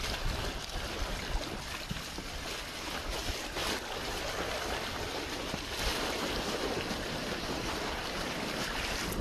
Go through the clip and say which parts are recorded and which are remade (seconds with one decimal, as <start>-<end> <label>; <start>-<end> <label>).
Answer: 0.0-9.2 recorded

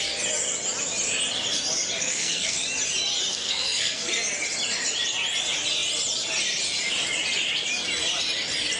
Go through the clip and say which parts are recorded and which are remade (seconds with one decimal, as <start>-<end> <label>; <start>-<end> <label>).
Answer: 0.0-2.0 recorded; 2.0-2.6 remade; 2.6-3.3 recorded; 3.3-4.1 remade; 4.1-8.8 recorded

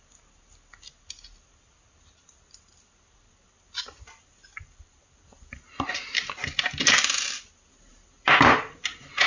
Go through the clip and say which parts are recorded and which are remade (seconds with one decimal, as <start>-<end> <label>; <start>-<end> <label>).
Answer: 0.0-9.3 recorded

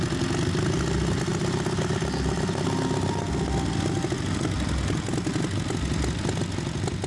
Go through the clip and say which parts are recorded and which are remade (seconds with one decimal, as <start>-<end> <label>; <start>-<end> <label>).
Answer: 0.0-7.1 recorded

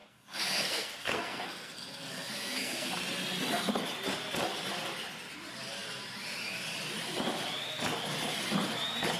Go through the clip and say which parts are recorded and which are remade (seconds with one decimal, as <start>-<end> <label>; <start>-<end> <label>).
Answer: 0.0-2.9 remade; 2.9-9.2 recorded

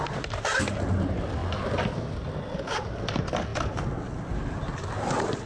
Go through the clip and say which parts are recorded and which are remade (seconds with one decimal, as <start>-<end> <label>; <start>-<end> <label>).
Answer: 0.0-5.5 recorded

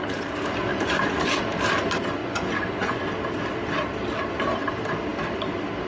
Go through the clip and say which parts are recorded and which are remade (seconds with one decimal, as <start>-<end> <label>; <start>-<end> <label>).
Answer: 0.0-0.7 recorded; 0.7-1.4 remade; 1.4-2.2 recorded; 2.2-3.0 remade; 3.0-5.9 recorded